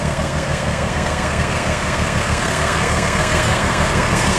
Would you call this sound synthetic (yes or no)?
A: yes